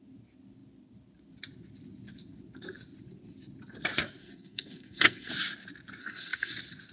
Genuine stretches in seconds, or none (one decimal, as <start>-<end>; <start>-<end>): 0.0-4.2; 5.3-6.0; 6.5-6.9